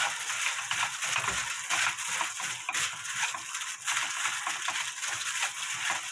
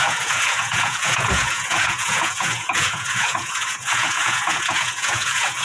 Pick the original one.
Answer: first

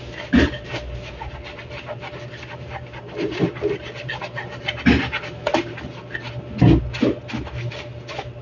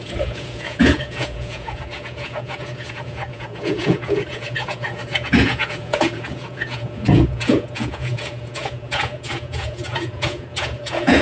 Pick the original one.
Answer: first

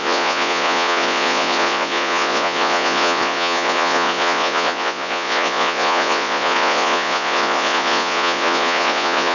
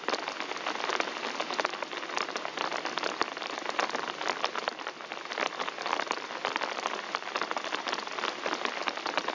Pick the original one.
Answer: second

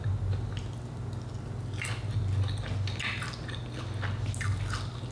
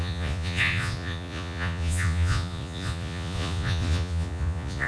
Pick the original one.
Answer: first